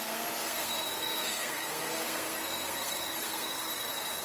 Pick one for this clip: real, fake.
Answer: fake